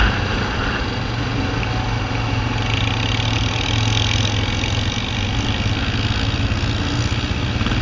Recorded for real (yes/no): yes